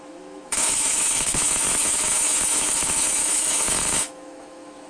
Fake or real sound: fake